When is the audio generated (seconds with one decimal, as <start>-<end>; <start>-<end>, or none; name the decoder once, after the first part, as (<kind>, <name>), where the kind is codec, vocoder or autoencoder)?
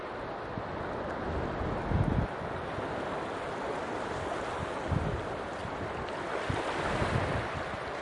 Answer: none